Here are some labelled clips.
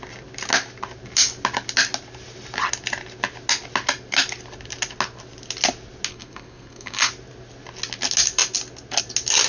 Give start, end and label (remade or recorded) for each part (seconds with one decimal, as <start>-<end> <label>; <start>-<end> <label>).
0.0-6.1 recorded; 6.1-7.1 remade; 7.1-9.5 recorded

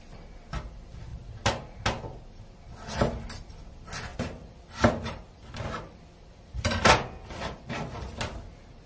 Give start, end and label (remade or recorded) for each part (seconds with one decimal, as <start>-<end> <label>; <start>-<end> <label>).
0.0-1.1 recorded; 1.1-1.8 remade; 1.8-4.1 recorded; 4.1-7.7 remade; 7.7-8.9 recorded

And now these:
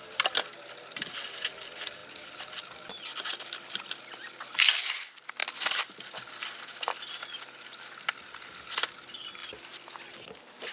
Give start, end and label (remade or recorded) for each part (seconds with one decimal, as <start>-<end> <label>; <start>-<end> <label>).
0.0-5.4 remade; 5.4-8.7 recorded; 8.7-10.7 remade

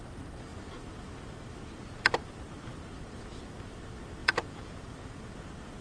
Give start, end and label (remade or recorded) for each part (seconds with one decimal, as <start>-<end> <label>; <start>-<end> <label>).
0.0-4.2 recorded; 4.2-4.9 remade; 4.9-5.8 recorded

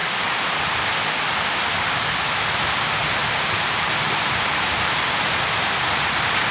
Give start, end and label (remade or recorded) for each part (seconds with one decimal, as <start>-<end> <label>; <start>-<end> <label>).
0.0-3.2 recorded; 3.2-5.0 remade; 5.0-6.5 recorded

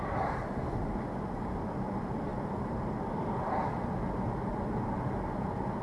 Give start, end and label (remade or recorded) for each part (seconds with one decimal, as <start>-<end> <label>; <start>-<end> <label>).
0.0-5.8 recorded

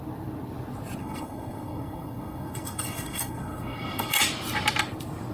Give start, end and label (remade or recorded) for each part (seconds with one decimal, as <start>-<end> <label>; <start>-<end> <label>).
0.0-1.0 recorded; 1.0-4.2 remade; 4.2-5.3 recorded